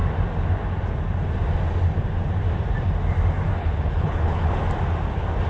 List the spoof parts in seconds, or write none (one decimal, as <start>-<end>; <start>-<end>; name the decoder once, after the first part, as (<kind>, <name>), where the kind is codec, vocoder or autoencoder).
3.6-4.5 (codec, HILCodec)

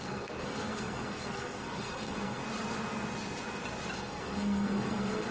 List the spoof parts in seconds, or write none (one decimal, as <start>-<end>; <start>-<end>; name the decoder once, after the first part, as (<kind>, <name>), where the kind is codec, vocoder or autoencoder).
0.0-2.4 (codec, SNAC); 3.9-5.3

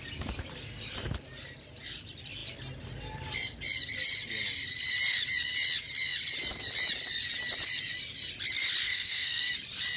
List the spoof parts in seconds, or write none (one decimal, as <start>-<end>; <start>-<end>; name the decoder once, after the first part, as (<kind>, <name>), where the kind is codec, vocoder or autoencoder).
8.8-9.5 (codec, SNAC)

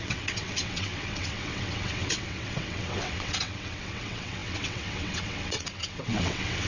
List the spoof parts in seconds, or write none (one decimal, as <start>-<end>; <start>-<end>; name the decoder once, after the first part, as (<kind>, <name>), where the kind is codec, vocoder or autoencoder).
0.0-6.7 (vocoder, WaveNeXt)

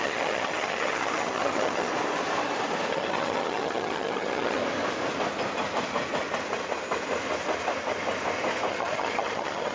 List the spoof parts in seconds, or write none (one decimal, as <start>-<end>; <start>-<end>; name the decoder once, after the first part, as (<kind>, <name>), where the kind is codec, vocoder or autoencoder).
0.0-1.9 (vocoder, HiFi-GAN); 2.9-4.6; 8.7-9.7

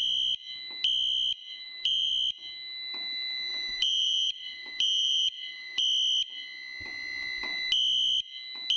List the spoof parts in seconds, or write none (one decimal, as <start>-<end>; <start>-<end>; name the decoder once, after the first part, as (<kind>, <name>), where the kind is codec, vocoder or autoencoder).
1.4-2.1 (vocoder, BigVGAN v2); 3.5-5.8

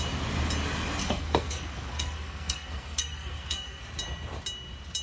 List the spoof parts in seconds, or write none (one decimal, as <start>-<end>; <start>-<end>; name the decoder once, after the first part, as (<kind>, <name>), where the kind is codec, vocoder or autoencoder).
1.0-3.8 (codec, SNAC)